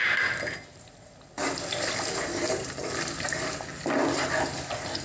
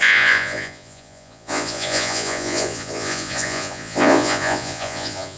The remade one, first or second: second